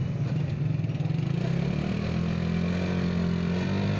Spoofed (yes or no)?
no